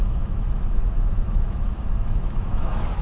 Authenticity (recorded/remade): remade